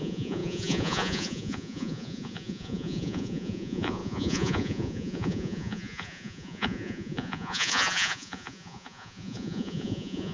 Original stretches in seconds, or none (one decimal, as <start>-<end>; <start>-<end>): none

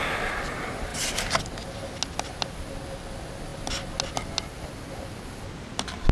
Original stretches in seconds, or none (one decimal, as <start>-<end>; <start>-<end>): 0.0-6.1

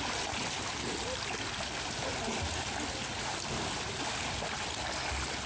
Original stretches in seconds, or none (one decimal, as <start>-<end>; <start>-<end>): 0.0-5.5